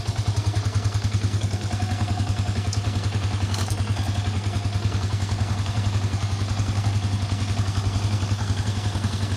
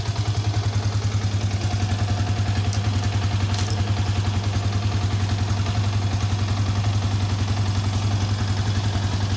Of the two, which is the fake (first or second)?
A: first